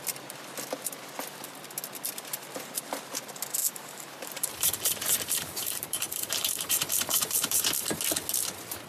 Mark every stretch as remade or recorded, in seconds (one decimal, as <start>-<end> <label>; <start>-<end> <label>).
0.0-3.6 recorded; 3.6-7.7 remade; 7.7-8.9 recorded